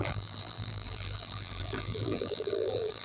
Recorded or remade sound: remade